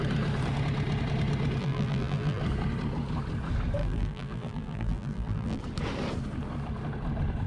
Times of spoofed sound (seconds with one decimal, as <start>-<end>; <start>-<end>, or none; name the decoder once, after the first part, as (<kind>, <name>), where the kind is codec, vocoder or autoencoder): 1.6-2.4 (vocoder, BigVGAN v2); 3.8-5.6